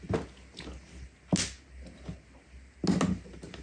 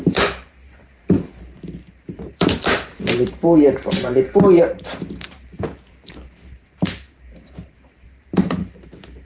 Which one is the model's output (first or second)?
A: second